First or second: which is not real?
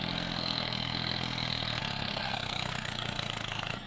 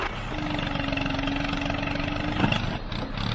first